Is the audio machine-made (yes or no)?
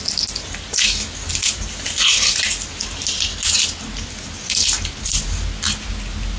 no